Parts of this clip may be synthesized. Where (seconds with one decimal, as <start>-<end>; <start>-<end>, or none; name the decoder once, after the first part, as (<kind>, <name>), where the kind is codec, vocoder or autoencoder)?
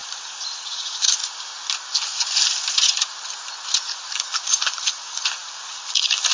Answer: 0.0-1.2 (vocoder, Vocos); 3.8-6.3